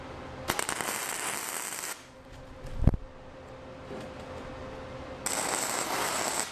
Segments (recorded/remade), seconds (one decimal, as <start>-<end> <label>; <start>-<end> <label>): 0.0-6.5 recorded